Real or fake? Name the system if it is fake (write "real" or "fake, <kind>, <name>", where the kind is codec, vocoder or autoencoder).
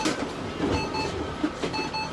real